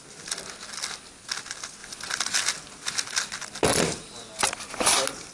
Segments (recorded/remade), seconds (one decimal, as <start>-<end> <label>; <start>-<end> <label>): 0.0-5.3 recorded